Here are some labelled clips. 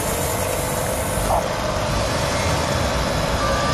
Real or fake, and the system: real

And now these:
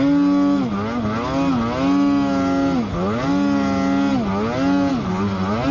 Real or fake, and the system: real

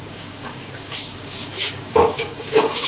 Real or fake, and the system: fake, codec, DAC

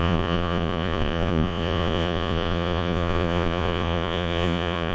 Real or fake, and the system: fake, vocoder, Vocos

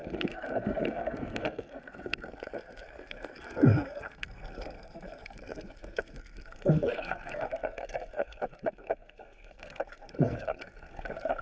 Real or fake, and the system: fake, codec, SNAC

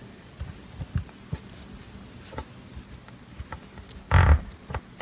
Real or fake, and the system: real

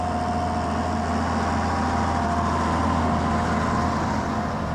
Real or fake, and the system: real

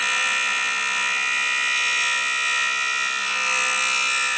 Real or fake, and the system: real